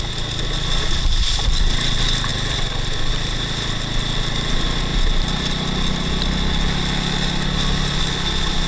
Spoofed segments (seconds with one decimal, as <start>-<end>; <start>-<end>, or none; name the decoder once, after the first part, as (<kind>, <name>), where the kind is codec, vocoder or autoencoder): none